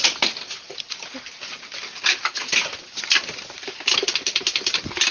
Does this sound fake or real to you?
real